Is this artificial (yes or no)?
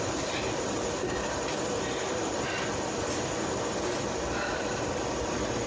no